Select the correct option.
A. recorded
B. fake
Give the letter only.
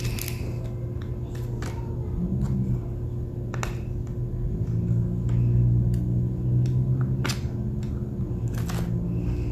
A